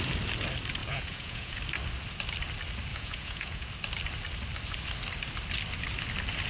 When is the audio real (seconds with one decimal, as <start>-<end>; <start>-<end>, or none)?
0.0-0.8; 1.6-2.9; 3.7-6.5